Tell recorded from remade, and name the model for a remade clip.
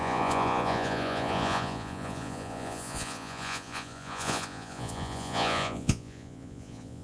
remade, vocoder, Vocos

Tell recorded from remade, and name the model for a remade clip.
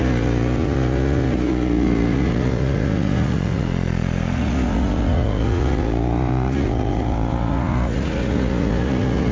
remade, vocoder, Vocos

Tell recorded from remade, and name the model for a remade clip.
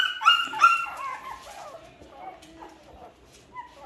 recorded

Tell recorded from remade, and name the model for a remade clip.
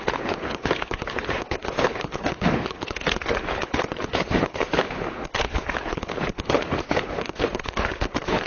remade, codec, HILCodec